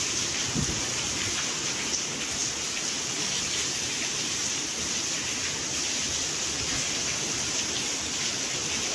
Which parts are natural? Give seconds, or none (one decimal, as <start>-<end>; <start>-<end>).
2.4-2.9; 4.4-8.9